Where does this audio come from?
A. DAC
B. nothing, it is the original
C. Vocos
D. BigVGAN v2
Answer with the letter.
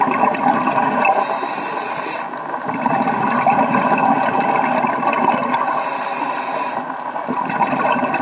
B